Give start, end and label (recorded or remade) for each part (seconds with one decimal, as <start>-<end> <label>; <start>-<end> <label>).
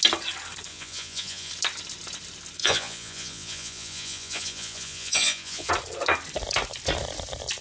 0.0-0.7 recorded; 0.7-1.5 remade; 1.5-2.6 recorded; 2.6-5.7 remade; 5.7-7.6 recorded